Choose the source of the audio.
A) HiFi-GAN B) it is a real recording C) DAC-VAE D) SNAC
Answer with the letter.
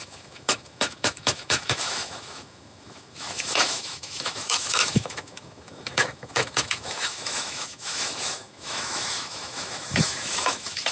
C